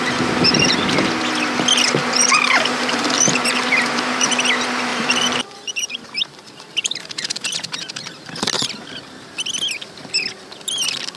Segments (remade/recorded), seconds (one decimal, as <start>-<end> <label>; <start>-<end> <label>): 0.0-2.0 recorded; 2.0-4.3 remade; 4.3-4.9 recorded; 4.9-7.5 remade; 7.5-11.2 recorded